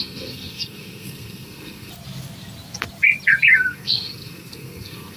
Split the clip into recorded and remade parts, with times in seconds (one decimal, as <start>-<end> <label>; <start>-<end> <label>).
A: 0.0-1.9 remade; 1.9-3.5 recorded; 3.5-5.2 remade